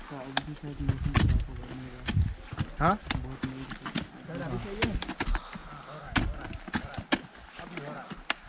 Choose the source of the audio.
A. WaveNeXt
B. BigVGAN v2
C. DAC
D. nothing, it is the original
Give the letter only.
D